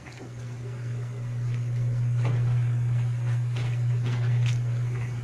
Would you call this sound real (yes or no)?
no